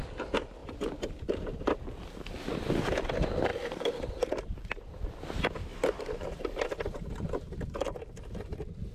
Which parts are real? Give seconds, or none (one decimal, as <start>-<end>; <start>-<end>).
0.0-0.6; 2.5-3.5; 4.7-5.7; 8.0-8.9